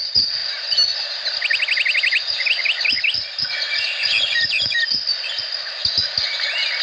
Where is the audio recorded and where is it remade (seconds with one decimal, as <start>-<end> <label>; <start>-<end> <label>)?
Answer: 0.0-6.8 recorded